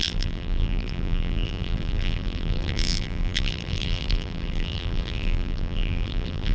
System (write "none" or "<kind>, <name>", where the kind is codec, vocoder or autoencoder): vocoder, BigVGAN v2